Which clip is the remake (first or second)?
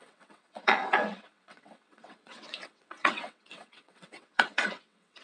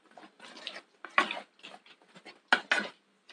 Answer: first